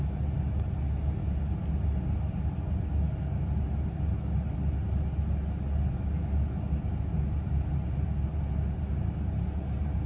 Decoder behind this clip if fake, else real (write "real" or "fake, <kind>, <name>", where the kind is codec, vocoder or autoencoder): real